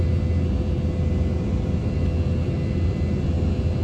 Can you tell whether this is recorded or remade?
recorded